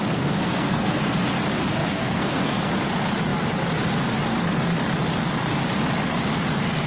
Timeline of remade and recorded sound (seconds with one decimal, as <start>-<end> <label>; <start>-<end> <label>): 0.0-1.0 remade; 1.0-1.8 recorded; 1.8-2.7 remade; 2.7-6.9 recorded